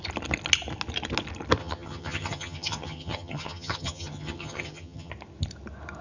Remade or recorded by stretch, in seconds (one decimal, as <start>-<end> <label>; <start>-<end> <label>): 0.0-1.6 recorded; 1.6-5.1 remade; 5.1-6.0 recorded